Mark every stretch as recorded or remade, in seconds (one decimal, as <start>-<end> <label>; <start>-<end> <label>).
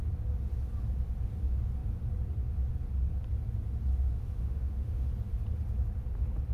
0.0-4.0 recorded; 4.0-5.1 remade; 5.1-6.5 recorded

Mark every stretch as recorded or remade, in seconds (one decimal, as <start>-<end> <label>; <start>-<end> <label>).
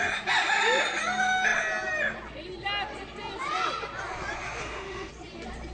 0.0-4.6 recorded; 4.6-5.1 remade; 5.1-5.7 recorded